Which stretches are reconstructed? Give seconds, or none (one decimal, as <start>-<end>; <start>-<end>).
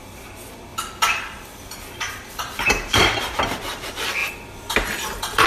0.7-3.4; 4.2-5.5